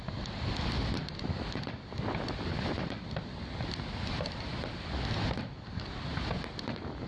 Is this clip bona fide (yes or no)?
yes